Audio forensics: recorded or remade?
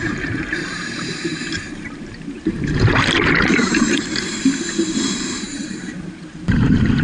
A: remade